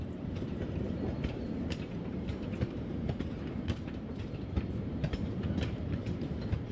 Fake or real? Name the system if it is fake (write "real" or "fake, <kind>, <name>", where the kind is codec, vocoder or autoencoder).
fake, vocoder, BigVGAN v2